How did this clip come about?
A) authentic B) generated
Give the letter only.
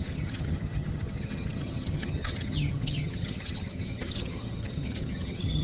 B